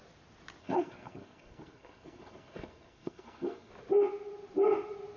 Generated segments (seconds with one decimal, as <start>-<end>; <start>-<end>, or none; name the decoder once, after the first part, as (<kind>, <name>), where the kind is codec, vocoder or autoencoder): 0.6-3.7 (codec, SNAC)